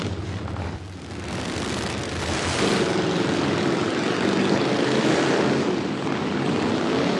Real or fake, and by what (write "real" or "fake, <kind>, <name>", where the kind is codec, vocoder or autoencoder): real